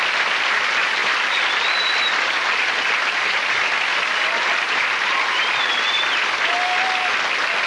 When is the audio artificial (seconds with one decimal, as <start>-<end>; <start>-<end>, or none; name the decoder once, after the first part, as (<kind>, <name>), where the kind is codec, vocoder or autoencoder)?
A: none